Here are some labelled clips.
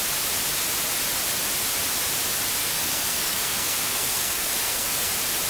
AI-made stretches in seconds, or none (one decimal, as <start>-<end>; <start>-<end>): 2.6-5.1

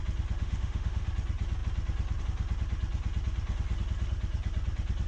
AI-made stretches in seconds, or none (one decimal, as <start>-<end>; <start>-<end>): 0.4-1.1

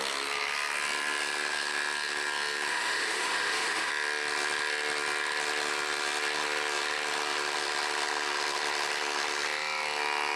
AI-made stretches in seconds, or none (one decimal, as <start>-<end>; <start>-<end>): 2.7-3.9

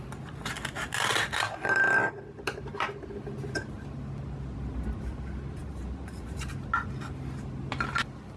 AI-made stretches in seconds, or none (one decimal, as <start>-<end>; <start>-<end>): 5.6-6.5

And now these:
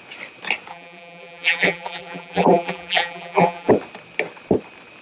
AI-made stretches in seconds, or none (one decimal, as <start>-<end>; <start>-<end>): 0.7-3.7